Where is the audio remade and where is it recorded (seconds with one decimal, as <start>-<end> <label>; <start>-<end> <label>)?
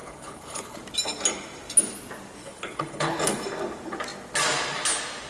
0.0-0.8 remade; 0.8-2.4 recorded; 2.4-3.2 remade; 3.2-5.3 recorded